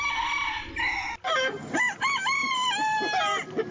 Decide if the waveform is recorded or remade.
recorded